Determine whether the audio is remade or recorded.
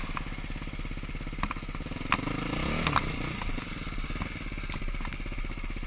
recorded